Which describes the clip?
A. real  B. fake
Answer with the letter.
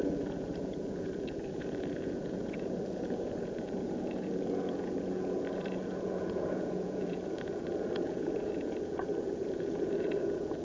B